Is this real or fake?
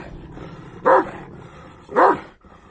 real